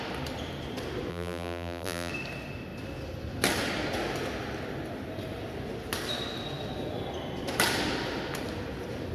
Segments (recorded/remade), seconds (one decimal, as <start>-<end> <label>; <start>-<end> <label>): 0.0-1.1 recorded; 1.1-2.1 remade; 2.1-9.1 recorded